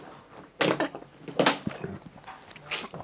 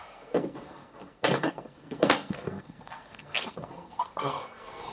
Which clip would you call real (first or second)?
first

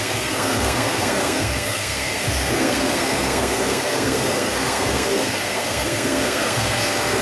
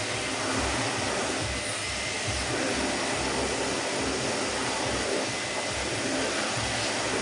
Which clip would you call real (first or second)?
second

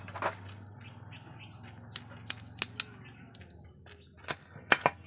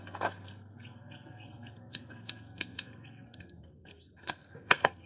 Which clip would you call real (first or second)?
first